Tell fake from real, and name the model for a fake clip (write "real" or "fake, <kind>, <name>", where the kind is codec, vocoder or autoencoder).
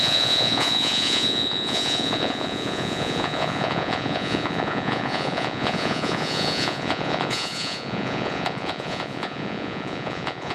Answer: fake, vocoder, Vocos